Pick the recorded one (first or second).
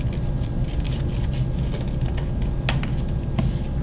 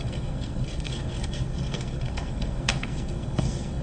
first